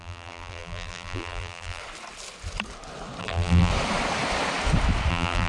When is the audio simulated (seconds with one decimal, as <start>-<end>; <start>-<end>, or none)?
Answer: 0.0-1.8; 3.2-3.7; 5.1-5.5